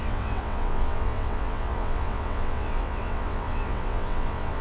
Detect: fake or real fake